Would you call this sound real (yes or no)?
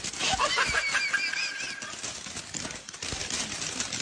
yes